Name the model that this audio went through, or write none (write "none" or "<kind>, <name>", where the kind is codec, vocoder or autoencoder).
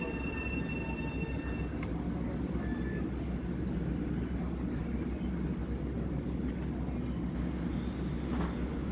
none